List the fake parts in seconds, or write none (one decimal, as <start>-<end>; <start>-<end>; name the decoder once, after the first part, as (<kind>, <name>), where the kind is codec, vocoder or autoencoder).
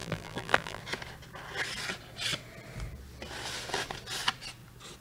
0.0-0.8 (vocoder, BigVGAN v2)